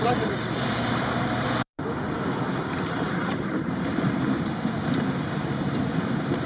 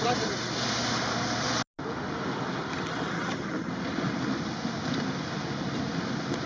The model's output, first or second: first